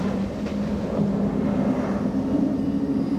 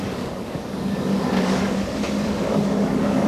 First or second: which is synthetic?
second